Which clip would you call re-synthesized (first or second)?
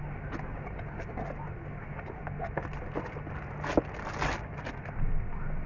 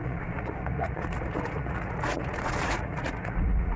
second